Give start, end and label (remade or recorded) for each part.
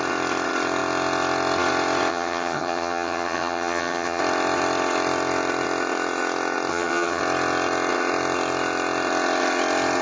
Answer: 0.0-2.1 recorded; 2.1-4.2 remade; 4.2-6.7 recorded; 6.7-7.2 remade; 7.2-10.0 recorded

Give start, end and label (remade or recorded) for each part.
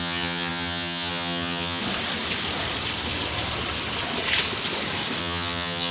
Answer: 0.0-1.8 remade; 1.8-5.2 recorded; 5.2-5.9 remade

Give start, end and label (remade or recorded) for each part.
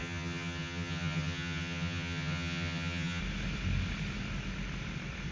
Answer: 0.0-3.2 remade; 3.2-5.3 recorded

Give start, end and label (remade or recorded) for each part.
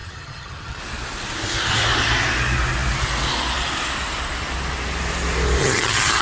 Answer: 0.0-0.8 remade; 0.8-5.6 recorded; 5.6-6.2 remade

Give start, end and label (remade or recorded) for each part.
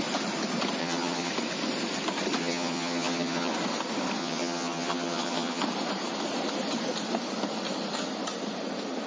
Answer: 0.0-0.8 recorded; 0.8-1.3 remade; 1.3-2.4 recorded; 2.4-3.5 remade; 3.5-4.2 recorded; 4.2-5.6 remade; 5.6-9.1 recorded